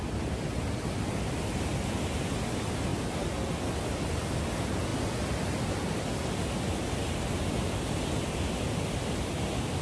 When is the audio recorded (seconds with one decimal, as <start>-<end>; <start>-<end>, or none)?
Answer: 0.0-9.8